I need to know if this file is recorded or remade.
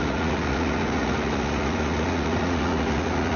remade